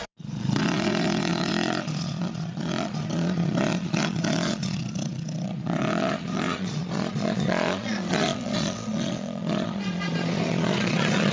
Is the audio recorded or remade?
remade